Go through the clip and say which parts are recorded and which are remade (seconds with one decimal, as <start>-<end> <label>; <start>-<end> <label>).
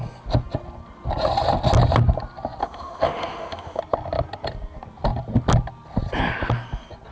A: 0.0-2.6 recorded; 2.6-3.8 remade; 3.8-7.1 recorded